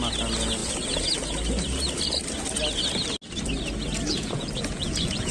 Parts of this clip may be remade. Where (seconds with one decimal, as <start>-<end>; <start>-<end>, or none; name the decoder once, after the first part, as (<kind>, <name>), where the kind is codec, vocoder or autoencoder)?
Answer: 4.1-5.3 (vocoder, Vocos)